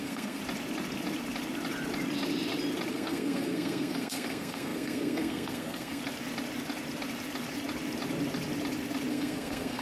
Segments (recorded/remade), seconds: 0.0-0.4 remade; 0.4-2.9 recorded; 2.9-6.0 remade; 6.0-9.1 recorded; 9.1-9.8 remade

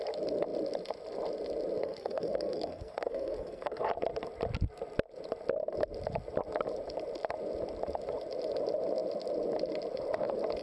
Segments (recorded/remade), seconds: 0.0-1.8 recorded; 1.8-3.8 remade; 3.8-10.6 recorded

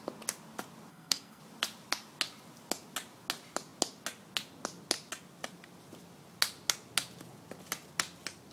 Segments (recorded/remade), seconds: 0.0-0.9 recorded; 0.9-1.4 remade; 1.4-8.5 recorded